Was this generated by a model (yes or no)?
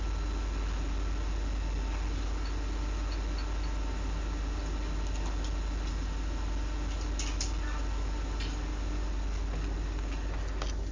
no